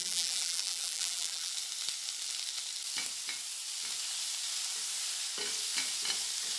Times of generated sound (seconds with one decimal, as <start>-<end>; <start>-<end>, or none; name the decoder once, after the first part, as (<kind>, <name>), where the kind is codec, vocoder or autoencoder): 0.0-1.5 (vocoder, BigVGAN v2)